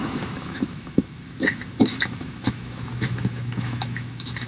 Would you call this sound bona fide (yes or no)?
no